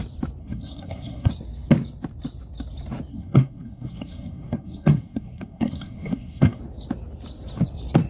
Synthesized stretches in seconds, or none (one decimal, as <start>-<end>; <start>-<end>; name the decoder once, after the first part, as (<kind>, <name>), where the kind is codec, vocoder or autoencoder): 0.4-1.3 (codec, SNAC); 3.1-6.6